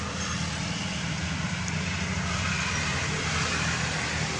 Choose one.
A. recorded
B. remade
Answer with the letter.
A